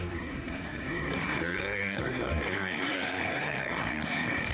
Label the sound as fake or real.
fake